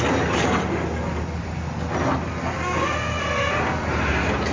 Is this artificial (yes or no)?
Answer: no